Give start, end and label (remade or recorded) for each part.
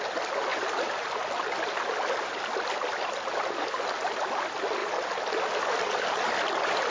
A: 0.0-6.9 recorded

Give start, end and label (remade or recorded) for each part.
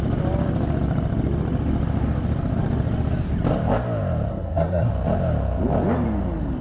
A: 0.0-4.3 recorded; 4.3-4.9 remade; 4.9-6.6 recorded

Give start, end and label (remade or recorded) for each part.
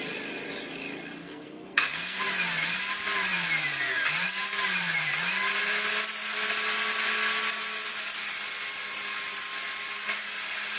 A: 0.0-1.2 recorded; 1.2-2.2 remade; 2.2-10.8 recorded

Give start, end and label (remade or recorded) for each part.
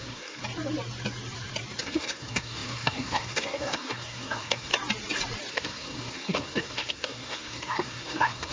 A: 0.0-0.4 remade; 0.4-1.8 recorded; 1.8-4.7 remade; 4.7-5.5 recorded; 5.5-8.5 remade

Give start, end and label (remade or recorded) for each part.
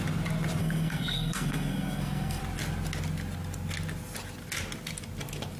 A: 0.0-0.6 recorded; 0.6-2.4 remade; 2.4-5.6 recorded